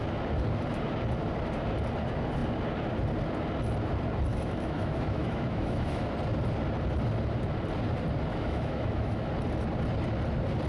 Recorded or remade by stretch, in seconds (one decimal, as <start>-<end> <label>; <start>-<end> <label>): 0.0-4.3 recorded; 4.3-6.1 remade; 6.1-8.3 recorded; 8.3-9.3 remade; 9.3-10.7 recorded